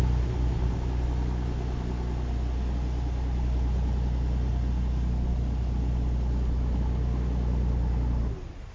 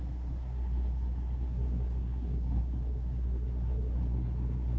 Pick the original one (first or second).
first